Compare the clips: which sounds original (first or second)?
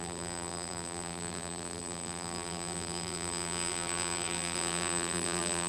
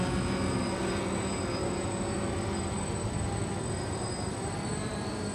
second